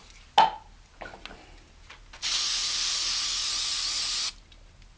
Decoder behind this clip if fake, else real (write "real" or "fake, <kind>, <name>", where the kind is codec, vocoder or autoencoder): real